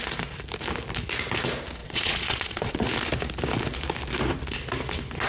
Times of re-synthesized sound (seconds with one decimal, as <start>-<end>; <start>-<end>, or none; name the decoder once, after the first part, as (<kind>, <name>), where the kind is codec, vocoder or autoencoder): 1.8-2.8 (vocoder, Vocos)